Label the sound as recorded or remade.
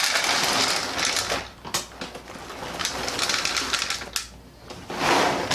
recorded